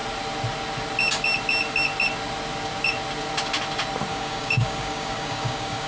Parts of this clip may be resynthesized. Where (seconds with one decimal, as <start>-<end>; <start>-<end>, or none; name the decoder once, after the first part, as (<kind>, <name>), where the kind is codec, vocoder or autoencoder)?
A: 4.1-5.9 (codec, DAC)